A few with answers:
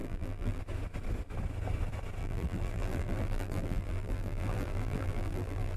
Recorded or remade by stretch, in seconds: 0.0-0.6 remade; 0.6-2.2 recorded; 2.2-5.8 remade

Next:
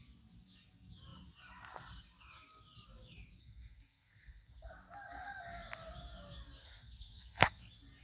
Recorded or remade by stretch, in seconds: 0.0-3.4 recorded; 3.4-4.7 remade; 4.7-6.6 recorded; 6.6-7.6 remade; 7.6-8.0 recorded

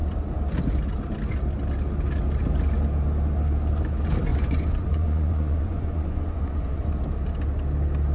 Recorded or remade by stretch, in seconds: 0.0-4.3 recorded; 4.3-6.9 remade; 6.9-8.1 recorded

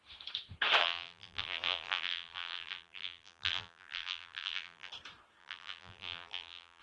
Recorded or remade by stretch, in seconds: 0.0-0.8 recorded; 0.8-4.9 remade; 4.9-5.4 recorded; 5.4-6.8 remade

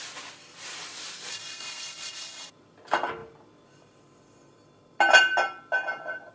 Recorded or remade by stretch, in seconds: 0.0-1.3 recorded; 1.3-2.5 remade; 2.5-6.3 recorded

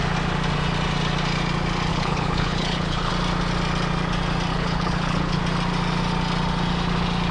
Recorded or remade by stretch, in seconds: 0.0-1.9 recorded; 1.9-3.1 remade; 3.1-4.5 recorded; 4.5-5.4 remade; 5.4-7.3 recorded

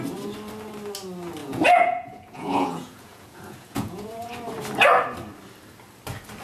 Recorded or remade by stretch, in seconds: 0.0-1.4 recorded; 1.4-4.3 remade; 4.3-6.4 recorded